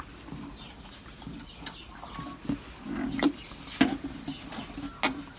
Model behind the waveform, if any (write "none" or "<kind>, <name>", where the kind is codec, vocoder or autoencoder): none